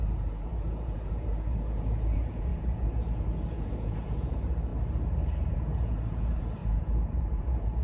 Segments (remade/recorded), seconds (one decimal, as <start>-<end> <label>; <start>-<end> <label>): 0.0-4.7 remade; 4.7-5.5 recorded; 5.5-7.8 remade